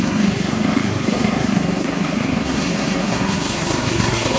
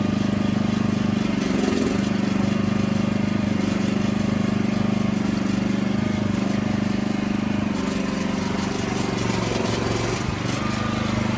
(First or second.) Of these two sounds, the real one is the second